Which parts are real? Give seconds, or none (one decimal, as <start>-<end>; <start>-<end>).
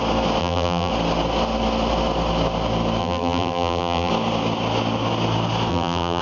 0.0-0.4; 0.9-3.0; 4.1-5.7